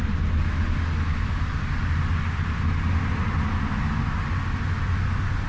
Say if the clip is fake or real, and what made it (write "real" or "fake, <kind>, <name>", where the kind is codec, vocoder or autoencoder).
real